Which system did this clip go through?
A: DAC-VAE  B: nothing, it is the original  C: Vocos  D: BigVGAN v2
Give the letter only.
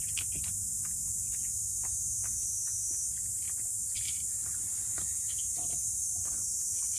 B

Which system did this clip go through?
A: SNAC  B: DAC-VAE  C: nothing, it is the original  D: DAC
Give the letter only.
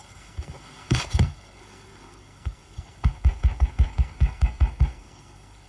A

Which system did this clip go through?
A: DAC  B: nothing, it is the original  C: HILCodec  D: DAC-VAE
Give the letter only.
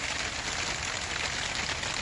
B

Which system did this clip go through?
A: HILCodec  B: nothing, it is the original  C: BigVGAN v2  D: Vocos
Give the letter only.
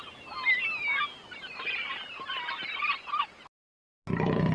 B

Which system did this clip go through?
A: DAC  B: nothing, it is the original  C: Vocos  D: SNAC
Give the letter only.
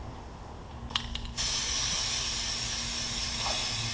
B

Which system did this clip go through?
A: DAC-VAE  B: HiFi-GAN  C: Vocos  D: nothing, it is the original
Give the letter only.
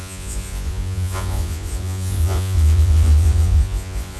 C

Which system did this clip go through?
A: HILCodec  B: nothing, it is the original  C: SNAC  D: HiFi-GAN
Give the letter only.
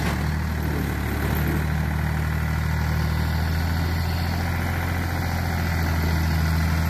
B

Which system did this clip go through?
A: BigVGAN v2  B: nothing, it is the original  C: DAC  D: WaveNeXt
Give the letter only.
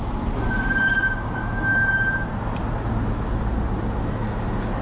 B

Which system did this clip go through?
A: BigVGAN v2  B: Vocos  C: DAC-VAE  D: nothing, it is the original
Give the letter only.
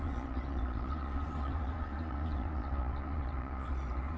B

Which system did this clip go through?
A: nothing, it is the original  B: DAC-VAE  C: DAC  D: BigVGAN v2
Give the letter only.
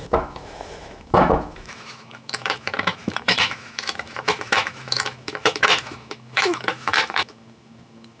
B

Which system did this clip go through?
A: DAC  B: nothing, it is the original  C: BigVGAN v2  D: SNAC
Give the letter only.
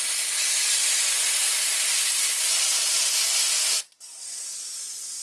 B